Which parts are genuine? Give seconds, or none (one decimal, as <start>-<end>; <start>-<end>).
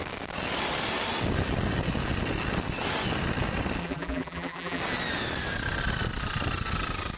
0.0-3.8; 4.8-7.2